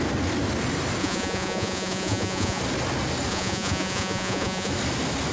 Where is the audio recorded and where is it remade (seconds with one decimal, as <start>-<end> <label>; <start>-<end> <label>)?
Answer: 0.0-1.0 recorded; 1.0-2.6 remade; 2.6-3.3 recorded; 3.3-4.7 remade; 4.7-5.3 recorded